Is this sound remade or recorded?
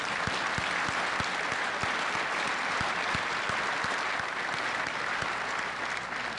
recorded